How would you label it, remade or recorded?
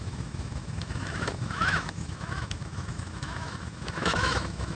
remade